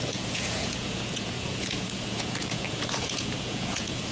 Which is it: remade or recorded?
remade